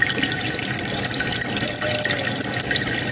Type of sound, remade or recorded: recorded